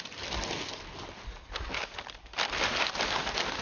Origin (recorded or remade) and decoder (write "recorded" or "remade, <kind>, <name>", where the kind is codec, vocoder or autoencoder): recorded